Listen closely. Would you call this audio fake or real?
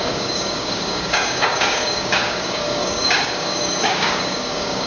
fake